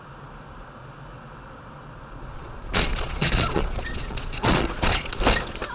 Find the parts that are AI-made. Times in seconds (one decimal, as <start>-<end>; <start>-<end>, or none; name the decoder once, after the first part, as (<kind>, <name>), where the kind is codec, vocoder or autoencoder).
2.3-5.2 (vocoder, Vocos)